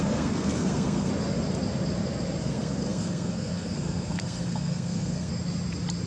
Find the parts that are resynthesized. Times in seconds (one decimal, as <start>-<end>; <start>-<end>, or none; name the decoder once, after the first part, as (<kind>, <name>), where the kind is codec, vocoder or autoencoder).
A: 0.0-1.1 (codec, SNAC); 2.4-5.3